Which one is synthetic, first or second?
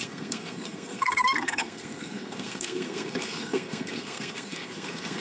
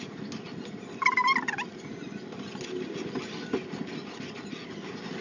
first